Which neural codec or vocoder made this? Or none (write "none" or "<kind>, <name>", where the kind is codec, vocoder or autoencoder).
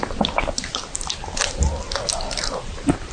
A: none